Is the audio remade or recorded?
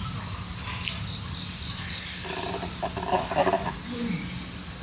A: recorded